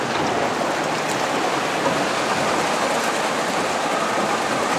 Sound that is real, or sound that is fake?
real